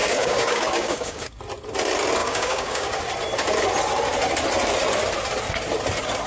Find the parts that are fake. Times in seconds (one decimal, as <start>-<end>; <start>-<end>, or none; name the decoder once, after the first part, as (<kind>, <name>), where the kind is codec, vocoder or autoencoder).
0.0-1.4 (codec, DAC); 2.2-3.0